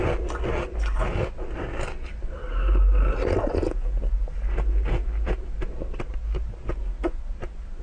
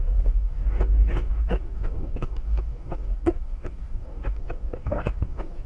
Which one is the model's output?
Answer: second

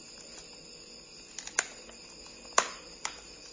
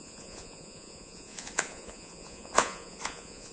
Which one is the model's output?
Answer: second